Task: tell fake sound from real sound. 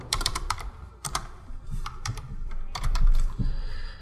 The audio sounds fake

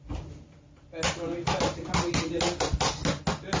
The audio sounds real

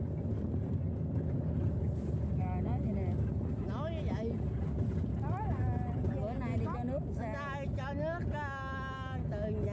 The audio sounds real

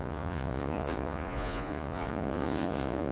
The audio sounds fake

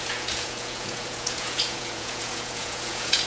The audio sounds fake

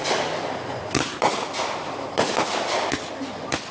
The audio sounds fake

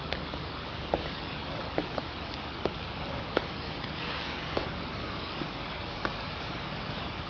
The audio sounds fake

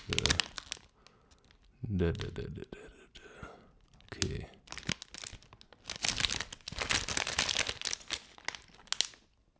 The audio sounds real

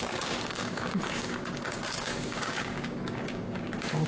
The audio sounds fake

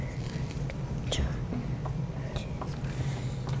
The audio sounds real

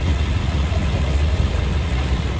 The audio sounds fake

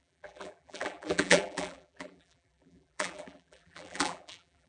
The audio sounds fake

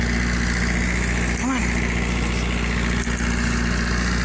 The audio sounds real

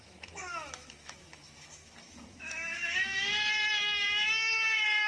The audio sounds fake